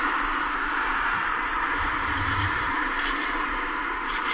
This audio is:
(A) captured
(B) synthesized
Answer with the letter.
B